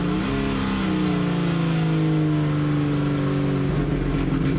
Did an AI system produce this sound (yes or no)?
no